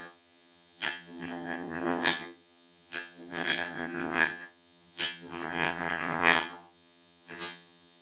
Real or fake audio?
fake